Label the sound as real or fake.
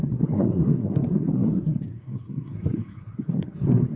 fake